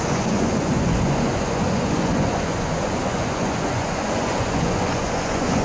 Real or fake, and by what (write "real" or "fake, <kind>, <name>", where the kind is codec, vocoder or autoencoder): fake, vocoder, Vocos